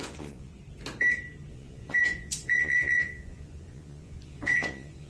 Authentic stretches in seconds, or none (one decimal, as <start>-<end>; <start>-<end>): 0.5-1.5